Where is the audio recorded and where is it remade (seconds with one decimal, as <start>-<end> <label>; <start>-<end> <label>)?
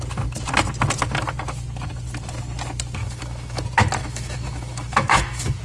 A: 0.0-3.0 recorded; 3.0-3.6 remade; 3.6-4.0 recorded; 4.0-5.6 remade